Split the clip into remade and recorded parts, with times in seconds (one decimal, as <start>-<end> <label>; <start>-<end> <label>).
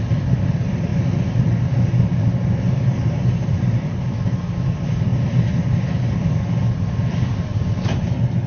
0.0-0.9 remade; 0.9-2.3 recorded; 2.3-5.1 remade; 5.1-7.1 recorded; 7.1-8.5 remade